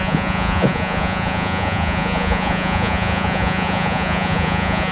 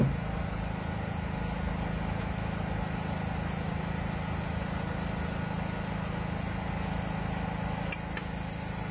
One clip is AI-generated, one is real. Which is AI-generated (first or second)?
first